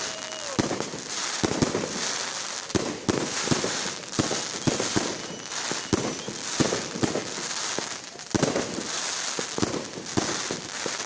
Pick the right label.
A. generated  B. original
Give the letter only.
B